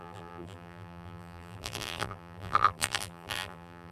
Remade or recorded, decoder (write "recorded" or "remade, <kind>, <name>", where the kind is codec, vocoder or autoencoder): remade, vocoder, BigVGAN v2